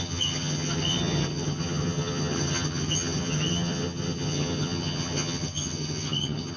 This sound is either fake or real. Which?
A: fake